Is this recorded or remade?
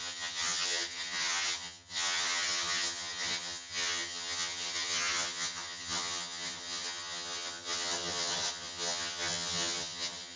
remade